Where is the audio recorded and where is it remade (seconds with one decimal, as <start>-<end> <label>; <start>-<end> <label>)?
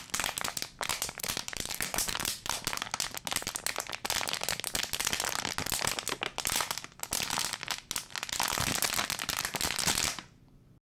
0.0-0.9 recorded; 0.9-2.6 remade; 2.6-11.0 recorded